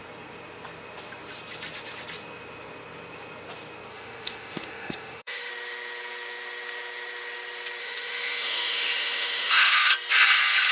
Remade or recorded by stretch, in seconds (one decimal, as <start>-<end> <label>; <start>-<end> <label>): 0.0-3.9 recorded; 3.9-5.5 remade; 5.5-7.8 recorded; 7.8-9.9 remade; 9.9-10.7 recorded